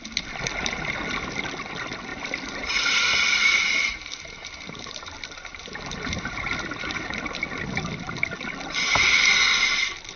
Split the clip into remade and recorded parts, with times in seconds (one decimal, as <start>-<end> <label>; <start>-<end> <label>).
0.0-2.1 recorded; 2.1-3.0 remade; 3.0-3.6 recorded; 3.6-7.4 remade; 7.4-10.2 recorded